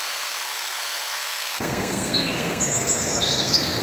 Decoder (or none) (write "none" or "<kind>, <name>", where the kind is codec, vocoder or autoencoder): codec, SNAC